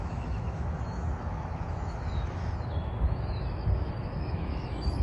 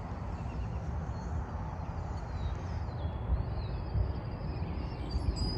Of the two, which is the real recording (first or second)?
second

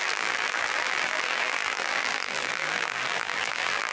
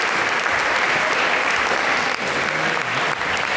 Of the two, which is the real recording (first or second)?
second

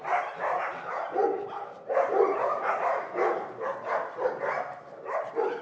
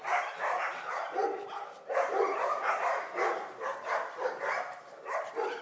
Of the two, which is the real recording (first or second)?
first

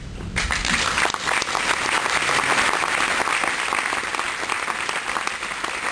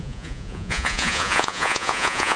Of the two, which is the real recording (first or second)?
first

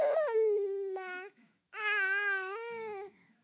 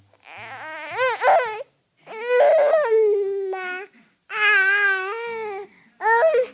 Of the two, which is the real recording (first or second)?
second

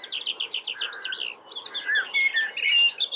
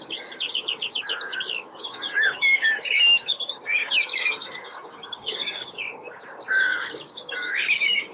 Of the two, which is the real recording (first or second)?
first